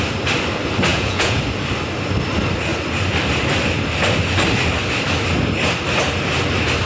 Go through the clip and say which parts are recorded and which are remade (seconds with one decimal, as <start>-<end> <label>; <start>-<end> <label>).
0.0-0.9 recorded; 0.9-1.4 remade; 1.4-6.9 recorded

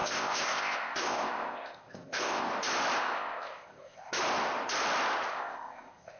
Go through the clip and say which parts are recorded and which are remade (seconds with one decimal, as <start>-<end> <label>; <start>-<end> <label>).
0.0-2.5 remade; 2.5-3.0 recorded; 3.0-4.1 remade; 4.1-5.3 recorded; 5.3-6.2 remade

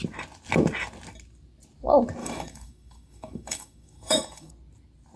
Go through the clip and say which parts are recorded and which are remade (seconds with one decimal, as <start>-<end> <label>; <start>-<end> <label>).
0.0-2.2 recorded; 2.2-4.5 remade; 4.5-5.2 recorded

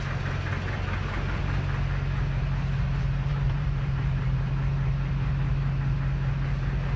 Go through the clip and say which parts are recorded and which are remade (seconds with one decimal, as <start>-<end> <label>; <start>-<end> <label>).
0.0-3.3 recorded; 3.3-4.5 remade; 4.5-7.0 recorded

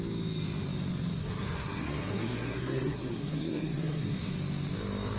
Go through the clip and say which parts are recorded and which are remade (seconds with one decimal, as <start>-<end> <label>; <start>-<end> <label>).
0.0-1.2 recorded; 1.2-4.3 remade; 4.3-5.2 recorded

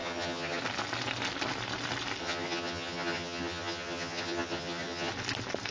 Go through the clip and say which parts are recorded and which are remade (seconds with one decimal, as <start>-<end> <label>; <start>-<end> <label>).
0.0-0.6 remade; 0.6-2.2 recorded; 2.2-5.1 remade; 5.1-5.7 recorded

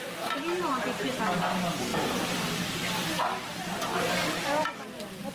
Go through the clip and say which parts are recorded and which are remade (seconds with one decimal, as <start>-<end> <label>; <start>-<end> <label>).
0.0-0.7 recorded; 0.7-1.4 remade; 1.4-1.9 recorded; 1.9-5.3 remade